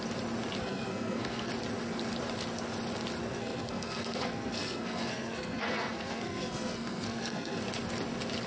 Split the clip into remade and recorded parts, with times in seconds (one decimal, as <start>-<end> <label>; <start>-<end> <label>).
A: 0.0-0.6 recorded; 0.6-1.5 remade; 1.5-3.2 recorded; 3.2-7.6 remade; 7.6-8.5 recorded